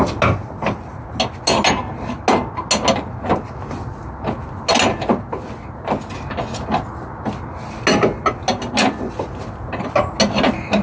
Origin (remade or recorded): recorded